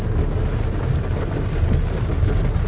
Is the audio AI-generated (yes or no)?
no